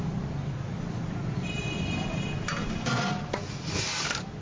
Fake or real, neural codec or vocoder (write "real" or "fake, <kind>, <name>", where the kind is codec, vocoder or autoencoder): real